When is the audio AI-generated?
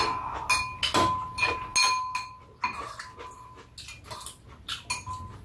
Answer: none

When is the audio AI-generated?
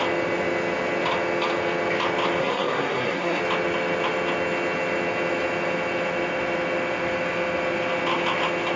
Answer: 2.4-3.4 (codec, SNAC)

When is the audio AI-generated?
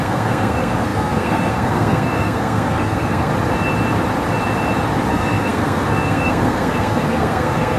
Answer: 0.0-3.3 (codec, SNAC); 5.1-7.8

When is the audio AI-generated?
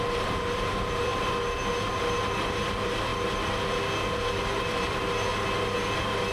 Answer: 0.0-1.1 (vocoder, BigVGAN v2); 2.0-3.1; 4.6-5.3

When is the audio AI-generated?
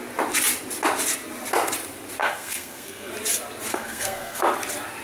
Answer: 2.2-3.1 (codec, SNAC); 3.7-4.4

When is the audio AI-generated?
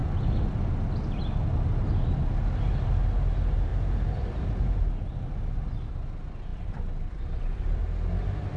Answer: 6.5-7.8 (vocoder, BigVGAN v2)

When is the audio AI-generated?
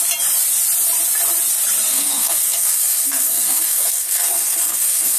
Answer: 1.9-5.2 (codec, SNAC)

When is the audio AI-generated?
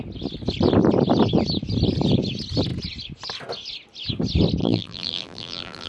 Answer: 4.6-5.9 (vocoder, BigVGAN v2)